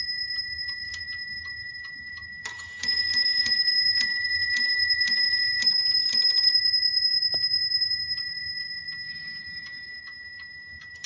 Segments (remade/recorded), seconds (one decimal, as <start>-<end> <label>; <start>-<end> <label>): 0.0-11.1 remade